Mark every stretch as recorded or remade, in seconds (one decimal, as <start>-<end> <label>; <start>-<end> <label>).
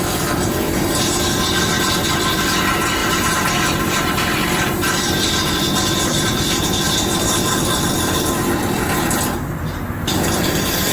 0.0-8.6 remade; 8.6-10.1 recorded; 10.1-10.9 remade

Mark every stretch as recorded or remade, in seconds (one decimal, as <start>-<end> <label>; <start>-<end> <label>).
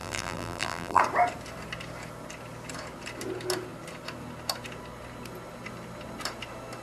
0.0-1.0 remade; 1.0-6.8 recorded